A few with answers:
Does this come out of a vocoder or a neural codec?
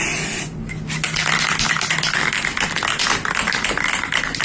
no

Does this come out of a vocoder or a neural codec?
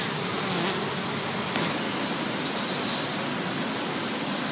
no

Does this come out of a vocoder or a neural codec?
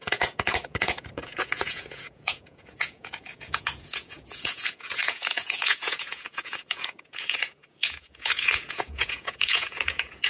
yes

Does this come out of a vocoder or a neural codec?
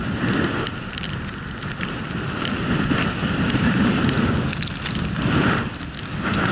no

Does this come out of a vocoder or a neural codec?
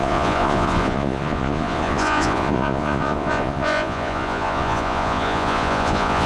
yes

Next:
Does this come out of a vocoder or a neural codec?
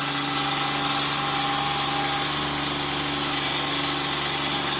no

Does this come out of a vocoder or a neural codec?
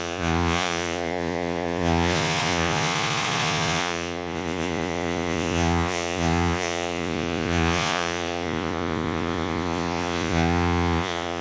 yes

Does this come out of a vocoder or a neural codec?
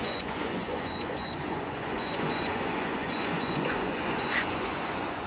yes